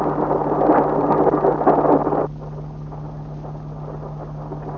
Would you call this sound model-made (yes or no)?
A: no